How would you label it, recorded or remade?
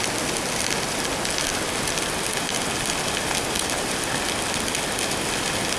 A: recorded